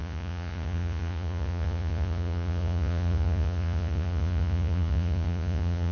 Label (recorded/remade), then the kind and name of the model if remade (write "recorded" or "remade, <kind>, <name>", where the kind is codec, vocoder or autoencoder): remade, vocoder, Vocos